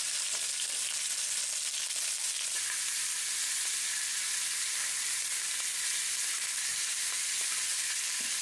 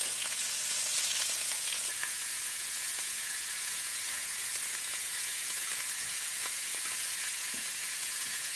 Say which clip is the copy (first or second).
second